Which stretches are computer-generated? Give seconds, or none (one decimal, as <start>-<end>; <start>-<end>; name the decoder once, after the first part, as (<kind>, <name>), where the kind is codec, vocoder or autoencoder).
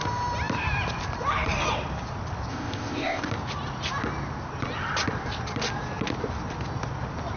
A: 2.5-3.3 (codec, ZipCodec)